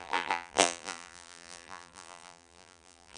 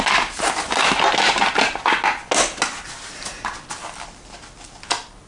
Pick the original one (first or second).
second